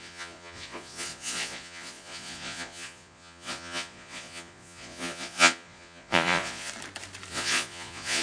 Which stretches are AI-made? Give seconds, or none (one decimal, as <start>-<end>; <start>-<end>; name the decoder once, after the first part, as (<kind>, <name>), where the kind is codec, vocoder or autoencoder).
0.0-6.7 (vocoder, Vocos); 7.3-8.2